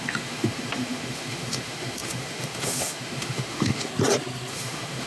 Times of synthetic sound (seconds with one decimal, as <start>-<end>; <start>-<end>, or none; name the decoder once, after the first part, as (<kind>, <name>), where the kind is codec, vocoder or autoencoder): 0.0-3.9 (autoencoder, DAC-VAE); 4.5-5.1